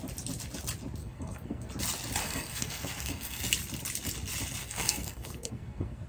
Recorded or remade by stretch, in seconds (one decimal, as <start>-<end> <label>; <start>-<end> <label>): 0.0-1.0 recorded; 1.0-1.7 remade; 1.7-2.2 recorded; 2.2-3.5 remade; 3.5-4.6 recorded; 4.6-6.1 remade